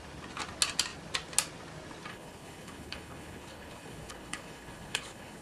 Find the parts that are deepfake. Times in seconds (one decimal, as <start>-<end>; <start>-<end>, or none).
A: 2.1-5.4